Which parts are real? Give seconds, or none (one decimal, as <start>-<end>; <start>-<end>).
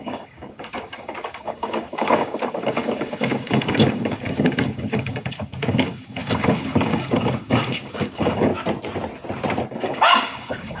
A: 8.5-9.7